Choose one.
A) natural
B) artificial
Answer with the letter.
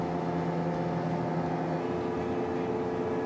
A